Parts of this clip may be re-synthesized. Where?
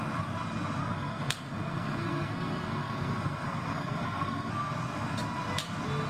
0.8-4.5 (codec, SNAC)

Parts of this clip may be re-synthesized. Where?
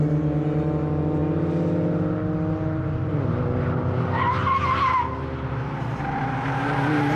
none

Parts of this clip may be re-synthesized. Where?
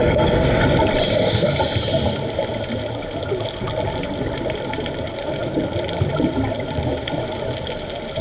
0.0-0.6 (codec, SNAC); 1.1-1.6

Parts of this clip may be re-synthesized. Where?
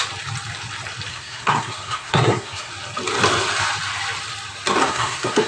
1.1-2.7 (codec, SNAC); 4.8-5.5